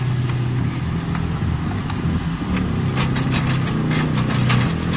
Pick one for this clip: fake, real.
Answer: real